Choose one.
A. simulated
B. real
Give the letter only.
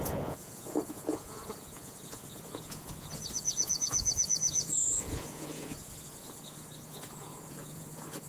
A